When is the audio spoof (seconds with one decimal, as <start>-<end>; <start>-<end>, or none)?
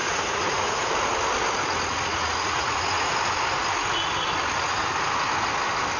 0.0-0.9; 2.1-3.1